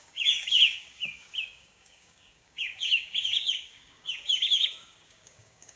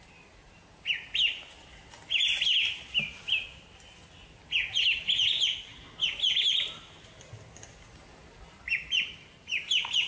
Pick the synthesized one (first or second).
first